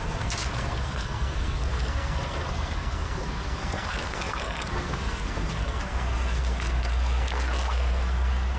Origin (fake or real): fake